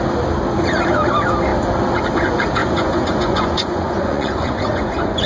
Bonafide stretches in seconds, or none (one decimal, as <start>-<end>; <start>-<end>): 0.0-2.6